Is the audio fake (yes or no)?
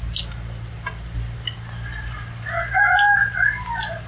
no